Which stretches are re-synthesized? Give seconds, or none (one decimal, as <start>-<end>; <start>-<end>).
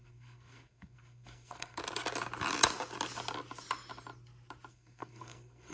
0.0-1.8; 4.7-5.7